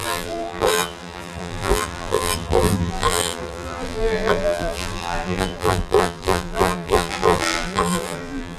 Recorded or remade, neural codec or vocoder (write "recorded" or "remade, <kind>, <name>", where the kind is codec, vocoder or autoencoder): remade, vocoder, BigVGAN v2